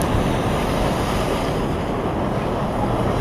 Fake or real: real